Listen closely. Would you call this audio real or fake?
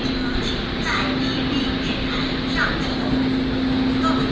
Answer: real